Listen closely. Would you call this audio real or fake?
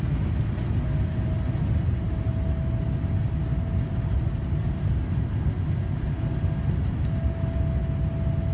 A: real